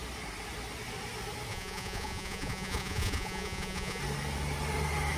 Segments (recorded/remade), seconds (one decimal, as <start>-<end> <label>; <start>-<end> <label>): 0.0-1.5 recorded; 1.5-4.0 remade; 4.0-5.2 recorded